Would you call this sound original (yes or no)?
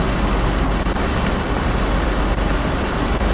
no